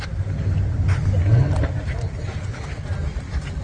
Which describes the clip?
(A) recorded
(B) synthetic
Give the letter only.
A